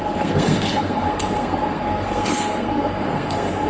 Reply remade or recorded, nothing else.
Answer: remade